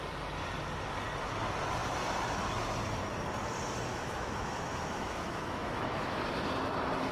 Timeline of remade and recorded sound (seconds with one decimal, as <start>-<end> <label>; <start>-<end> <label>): 0.0-3.9 recorded; 3.9-6.2 remade; 6.2-7.1 recorded

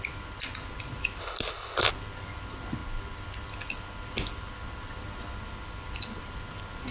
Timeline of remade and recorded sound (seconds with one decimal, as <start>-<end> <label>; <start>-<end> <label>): 0.0-1.2 recorded; 1.2-1.9 remade; 1.9-6.9 recorded